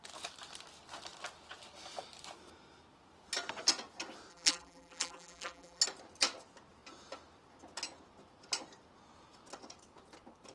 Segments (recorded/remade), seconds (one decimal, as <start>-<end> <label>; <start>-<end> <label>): 0.0-4.3 recorded; 4.3-5.8 remade; 5.8-10.5 recorded